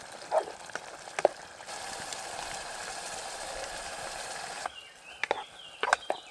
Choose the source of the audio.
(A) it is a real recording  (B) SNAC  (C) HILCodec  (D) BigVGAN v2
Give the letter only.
A